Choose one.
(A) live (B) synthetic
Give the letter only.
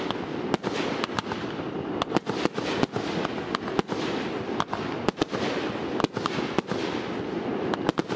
A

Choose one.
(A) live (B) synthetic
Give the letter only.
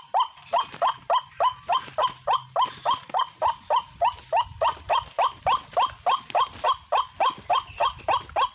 A